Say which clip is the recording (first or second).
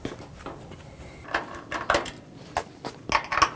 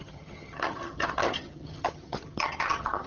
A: first